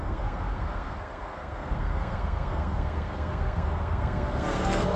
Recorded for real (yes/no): no